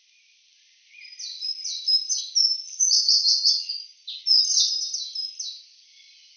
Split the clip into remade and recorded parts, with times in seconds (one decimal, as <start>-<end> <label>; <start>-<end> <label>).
0.0-6.4 recorded